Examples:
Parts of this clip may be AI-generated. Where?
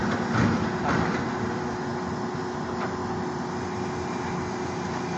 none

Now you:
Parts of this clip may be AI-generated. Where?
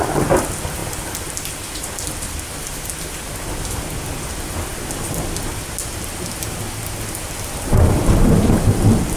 none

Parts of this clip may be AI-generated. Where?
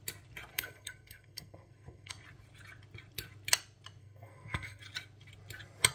0.5-2.1 (codec, SNAC); 4.0-4.8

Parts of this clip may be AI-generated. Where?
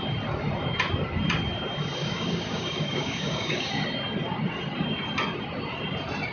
2.0-3.7 (codec, DAC)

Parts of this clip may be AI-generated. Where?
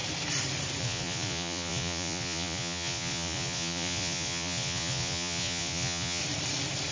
0.8-6.2 (vocoder, Vocos)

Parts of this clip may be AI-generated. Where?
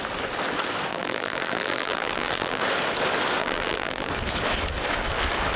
0.9-2.6 (vocoder, BigVGAN v2); 3.4-4.1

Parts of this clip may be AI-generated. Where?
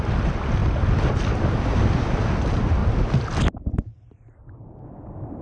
none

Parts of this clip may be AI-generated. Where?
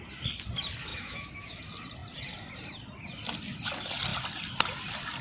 0.9-1.6 (autoencoder, DAC-VAE)